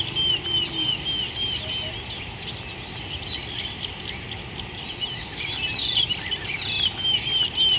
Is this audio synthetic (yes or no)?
no